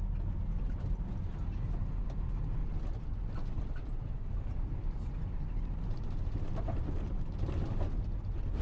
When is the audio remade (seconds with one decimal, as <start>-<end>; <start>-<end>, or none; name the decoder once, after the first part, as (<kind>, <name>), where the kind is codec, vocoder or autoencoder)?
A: 2.6-5.8 (vocoder, BigVGAN v2)